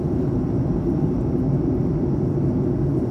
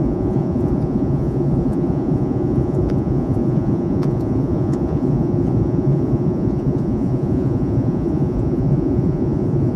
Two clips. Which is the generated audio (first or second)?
second